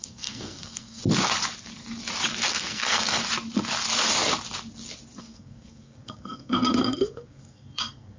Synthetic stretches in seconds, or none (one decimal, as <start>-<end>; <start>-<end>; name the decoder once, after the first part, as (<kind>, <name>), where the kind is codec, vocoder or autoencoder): 0.0-1.0 (codec, SNAC); 2.5-3.2; 5.2-8.2